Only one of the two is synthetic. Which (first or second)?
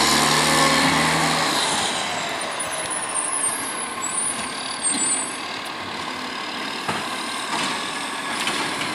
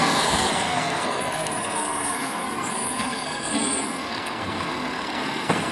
second